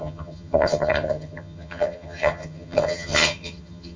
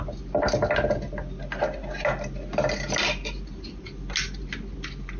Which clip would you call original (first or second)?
second